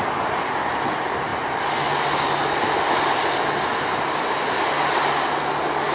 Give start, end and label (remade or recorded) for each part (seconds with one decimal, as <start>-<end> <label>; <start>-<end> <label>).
0.0-5.9 recorded